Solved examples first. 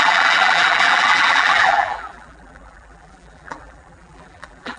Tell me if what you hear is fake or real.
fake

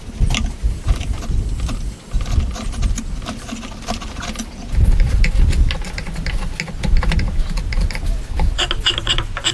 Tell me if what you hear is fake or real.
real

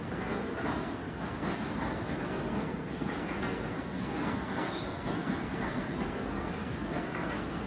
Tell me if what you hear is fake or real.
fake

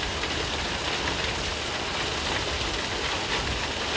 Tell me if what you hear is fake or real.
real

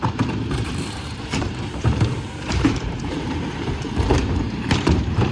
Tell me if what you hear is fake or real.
fake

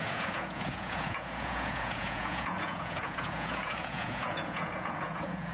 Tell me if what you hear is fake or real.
fake